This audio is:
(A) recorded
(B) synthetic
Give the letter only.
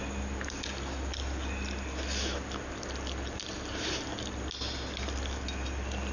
A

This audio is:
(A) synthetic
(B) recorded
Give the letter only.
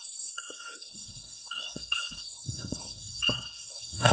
A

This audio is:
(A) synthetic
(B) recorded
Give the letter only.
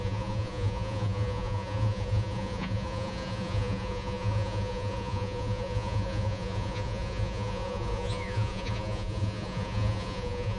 A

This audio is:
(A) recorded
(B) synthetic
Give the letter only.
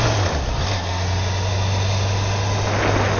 A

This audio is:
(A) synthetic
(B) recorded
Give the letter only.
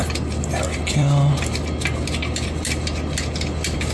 B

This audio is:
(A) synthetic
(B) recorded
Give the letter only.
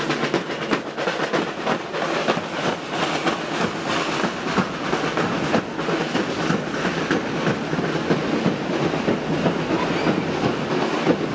B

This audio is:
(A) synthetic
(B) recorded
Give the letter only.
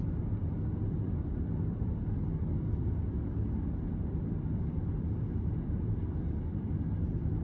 B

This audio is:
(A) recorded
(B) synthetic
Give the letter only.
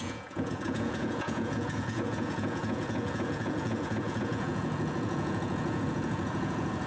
B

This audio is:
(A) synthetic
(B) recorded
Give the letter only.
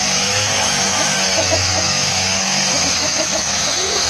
A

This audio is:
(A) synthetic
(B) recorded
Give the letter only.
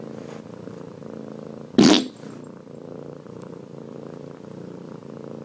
B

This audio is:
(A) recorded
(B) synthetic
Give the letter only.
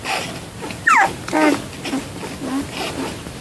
A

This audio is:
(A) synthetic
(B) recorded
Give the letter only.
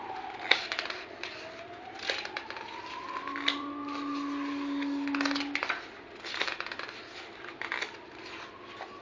B